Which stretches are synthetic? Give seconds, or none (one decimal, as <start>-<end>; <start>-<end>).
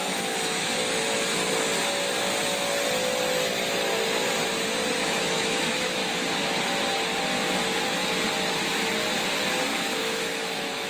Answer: 0.0-0.8; 5.0-6.0; 9.7-10.9